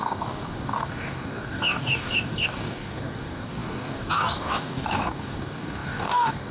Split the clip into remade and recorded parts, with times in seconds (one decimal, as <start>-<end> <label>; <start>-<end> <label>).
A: 0.0-6.5 remade